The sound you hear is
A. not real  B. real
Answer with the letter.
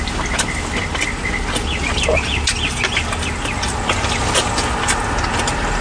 B